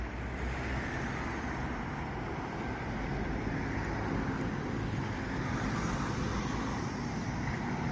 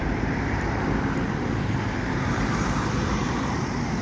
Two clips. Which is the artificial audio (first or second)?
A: second